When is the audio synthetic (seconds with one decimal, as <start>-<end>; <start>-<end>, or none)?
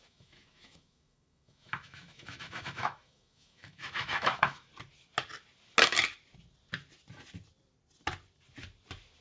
0.0-4.7